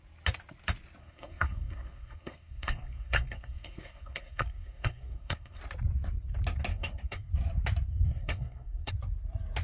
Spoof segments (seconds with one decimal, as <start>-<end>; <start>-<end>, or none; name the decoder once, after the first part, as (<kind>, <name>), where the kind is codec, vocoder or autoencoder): 1.0-5.6 (codec, SNAC); 6.7-7.3; 7.9-8.9